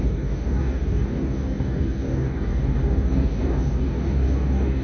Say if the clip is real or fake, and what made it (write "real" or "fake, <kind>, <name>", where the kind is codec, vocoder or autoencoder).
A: fake, codec, DAC